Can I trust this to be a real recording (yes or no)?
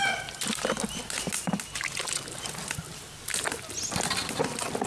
yes